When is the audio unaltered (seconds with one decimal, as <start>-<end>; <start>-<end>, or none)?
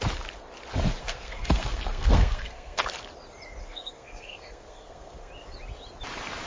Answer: 0.0-1.0; 2.8-3.6; 5.3-6.5